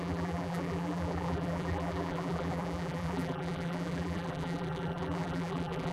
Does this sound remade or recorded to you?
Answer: remade